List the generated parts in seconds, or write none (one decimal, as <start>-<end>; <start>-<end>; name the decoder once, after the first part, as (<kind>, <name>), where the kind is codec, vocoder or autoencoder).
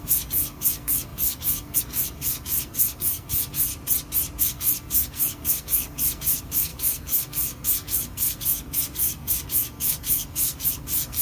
0.0-3.7 (codec, SNAC); 4.4-11.2